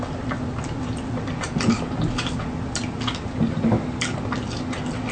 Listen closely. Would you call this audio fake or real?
real